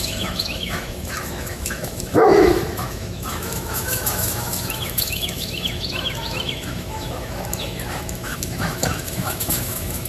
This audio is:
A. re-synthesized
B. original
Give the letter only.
A